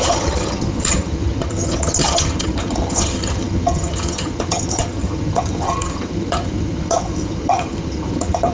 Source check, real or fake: fake